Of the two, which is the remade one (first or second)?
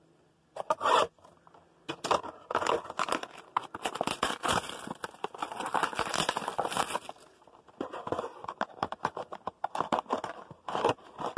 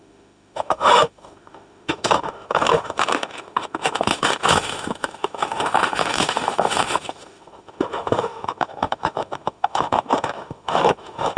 second